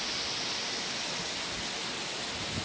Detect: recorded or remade recorded